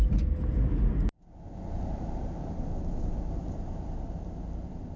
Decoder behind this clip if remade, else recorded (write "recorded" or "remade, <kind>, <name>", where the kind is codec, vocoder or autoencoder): recorded